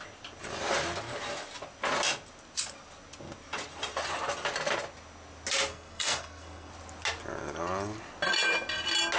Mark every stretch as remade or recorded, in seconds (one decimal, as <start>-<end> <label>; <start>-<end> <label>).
0.0-5.7 recorded; 5.7-6.7 remade; 6.7-9.2 recorded